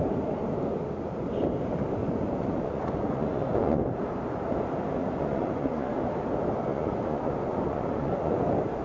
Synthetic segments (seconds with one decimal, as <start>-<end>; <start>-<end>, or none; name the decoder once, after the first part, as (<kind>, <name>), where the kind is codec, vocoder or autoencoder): 2.0-3.8 (vocoder, Vocos); 5.0-6.0; 6.7-8.4